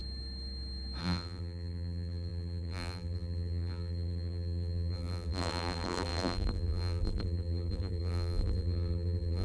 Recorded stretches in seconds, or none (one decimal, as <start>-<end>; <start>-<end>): 0.0-1.0